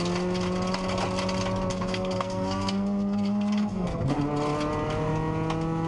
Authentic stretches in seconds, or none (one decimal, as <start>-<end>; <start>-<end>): 0.0-1.7; 4.2-5.9